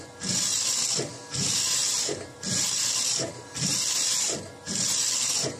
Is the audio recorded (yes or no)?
no